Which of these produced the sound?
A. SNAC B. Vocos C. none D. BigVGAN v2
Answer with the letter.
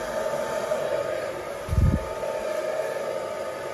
C